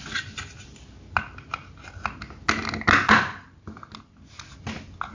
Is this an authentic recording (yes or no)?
yes